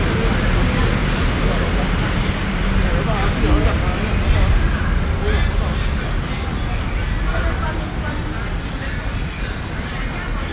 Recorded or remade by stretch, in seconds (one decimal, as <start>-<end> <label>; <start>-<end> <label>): 0.0-10.5 recorded